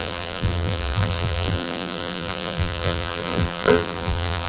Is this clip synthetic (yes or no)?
yes